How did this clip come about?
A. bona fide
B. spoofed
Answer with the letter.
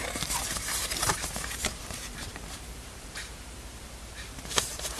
B